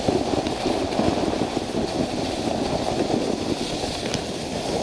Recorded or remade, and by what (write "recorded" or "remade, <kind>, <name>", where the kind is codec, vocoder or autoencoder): recorded